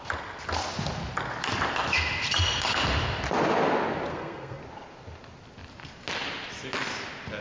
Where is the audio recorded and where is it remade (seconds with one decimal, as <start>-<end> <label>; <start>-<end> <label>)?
0.0-4.1 recorded; 4.1-4.6 remade; 4.6-7.4 recorded